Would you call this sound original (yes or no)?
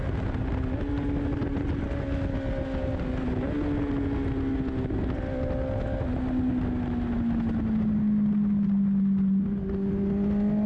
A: yes